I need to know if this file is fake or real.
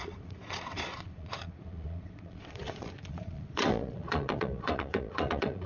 fake